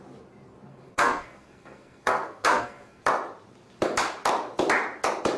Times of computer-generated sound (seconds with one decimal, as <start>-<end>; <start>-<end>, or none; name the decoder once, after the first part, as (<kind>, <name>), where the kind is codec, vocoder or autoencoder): 0.7-3.0 (codec, SNAC)